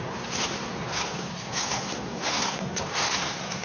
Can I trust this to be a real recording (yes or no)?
no